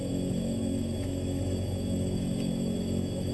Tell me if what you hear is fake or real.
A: fake